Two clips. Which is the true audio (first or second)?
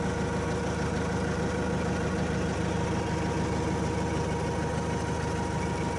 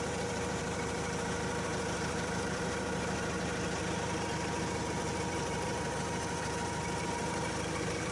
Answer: first